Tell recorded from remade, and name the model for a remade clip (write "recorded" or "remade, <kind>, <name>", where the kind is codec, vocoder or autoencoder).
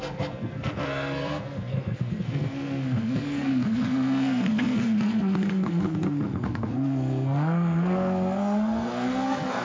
remade, codec, SNAC